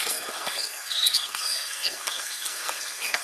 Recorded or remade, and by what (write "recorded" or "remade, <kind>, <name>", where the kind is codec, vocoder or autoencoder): remade, codec, SNAC